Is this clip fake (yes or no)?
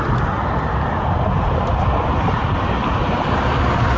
yes